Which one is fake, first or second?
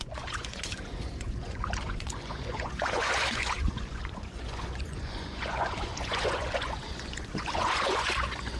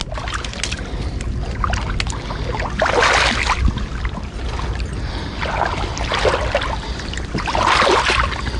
first